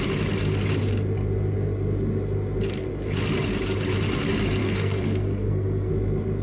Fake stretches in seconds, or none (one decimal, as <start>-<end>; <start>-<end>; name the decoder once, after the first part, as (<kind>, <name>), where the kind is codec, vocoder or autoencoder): 4.6-5.9 (codec, SNAC)